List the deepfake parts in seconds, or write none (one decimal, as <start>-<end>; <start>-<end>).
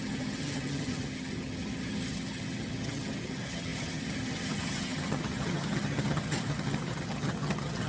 0.0-7.9